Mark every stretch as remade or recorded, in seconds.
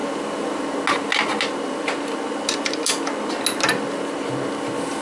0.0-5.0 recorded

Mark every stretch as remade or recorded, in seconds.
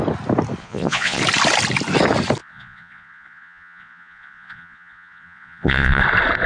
0.0-0.6 recorded; 0.6-1.2 remade; 1.2-2.4 recorded; 2.4-6.0 remade; 6.0-6.5 recorded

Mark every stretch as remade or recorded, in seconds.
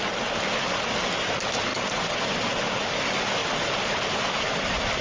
0.0-5.0 recorded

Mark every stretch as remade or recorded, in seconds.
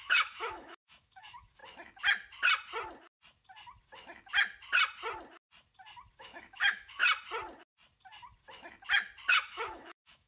0.0-1.6 remade; 1.6-6.2 recorded; 6.2-7.0 remade; 7.0-9.3 recorded; 9.3-10.3 remade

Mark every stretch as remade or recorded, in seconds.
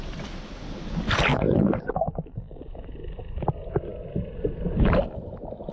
0.0-1.3 recorded; 1.3-2.6 remade; 2.6-5.7 recorded